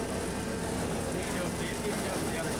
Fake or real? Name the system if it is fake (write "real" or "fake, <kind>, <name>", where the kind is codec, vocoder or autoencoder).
real